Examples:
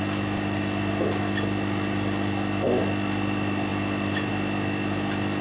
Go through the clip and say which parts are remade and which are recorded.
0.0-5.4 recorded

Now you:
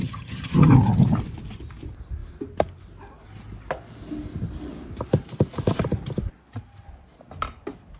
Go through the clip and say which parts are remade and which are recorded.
0.0-0.7 remade; 0.7-8.0 recorded